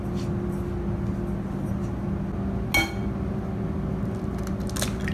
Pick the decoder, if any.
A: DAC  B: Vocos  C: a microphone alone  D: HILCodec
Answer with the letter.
C